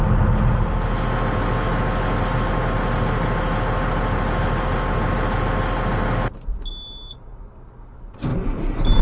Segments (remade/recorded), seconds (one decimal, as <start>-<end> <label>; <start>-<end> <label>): 0.0-9.0 recorded